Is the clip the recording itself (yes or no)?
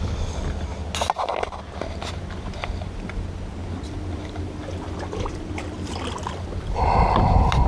yes